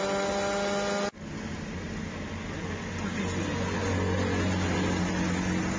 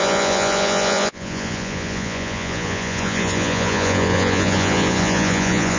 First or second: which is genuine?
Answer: first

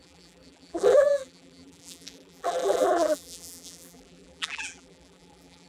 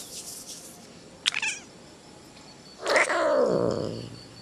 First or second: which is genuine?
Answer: second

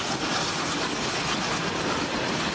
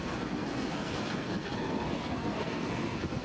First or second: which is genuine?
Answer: first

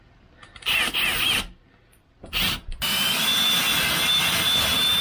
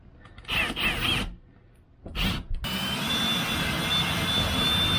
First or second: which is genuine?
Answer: second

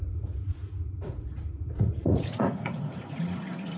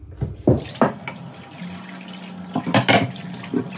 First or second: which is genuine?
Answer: second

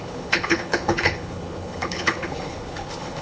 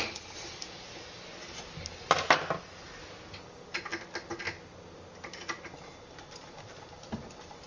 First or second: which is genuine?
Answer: second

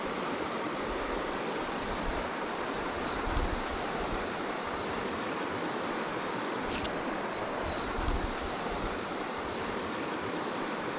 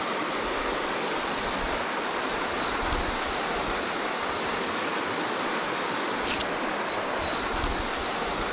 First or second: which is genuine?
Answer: second